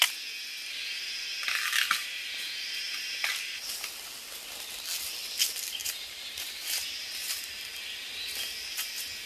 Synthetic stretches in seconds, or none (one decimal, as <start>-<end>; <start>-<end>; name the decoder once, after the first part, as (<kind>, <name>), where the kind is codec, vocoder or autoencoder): 5.8-7.5 (vocoder, BigVGAN v2)